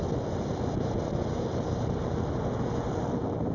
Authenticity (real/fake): real